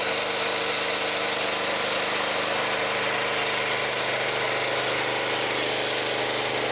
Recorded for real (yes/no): yes